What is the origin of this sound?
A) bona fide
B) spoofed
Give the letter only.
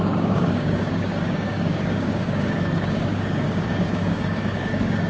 B